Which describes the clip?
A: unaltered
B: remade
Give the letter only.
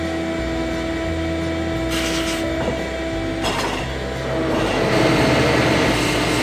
A